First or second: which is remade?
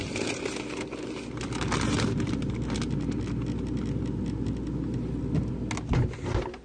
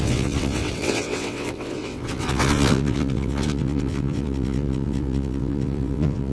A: second